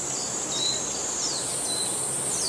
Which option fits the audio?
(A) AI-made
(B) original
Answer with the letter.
B